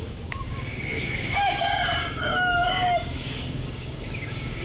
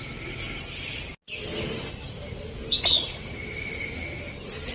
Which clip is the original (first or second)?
second